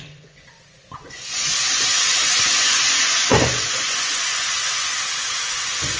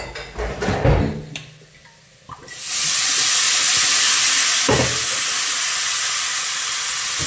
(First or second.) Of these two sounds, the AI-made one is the first